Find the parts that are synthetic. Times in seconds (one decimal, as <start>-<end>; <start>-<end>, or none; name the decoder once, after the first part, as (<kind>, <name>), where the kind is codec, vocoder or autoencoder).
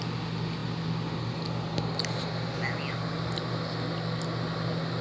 none